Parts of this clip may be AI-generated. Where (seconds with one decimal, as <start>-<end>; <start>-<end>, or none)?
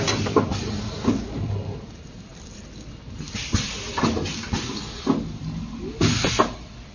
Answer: none